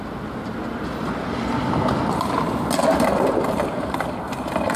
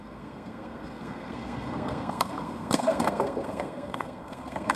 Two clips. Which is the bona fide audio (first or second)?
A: first